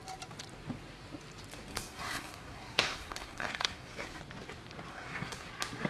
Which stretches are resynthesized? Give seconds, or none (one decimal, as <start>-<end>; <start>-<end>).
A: 1.7-4.2; 4.9-5.5